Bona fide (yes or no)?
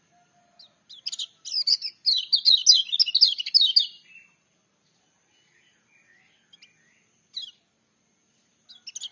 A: yes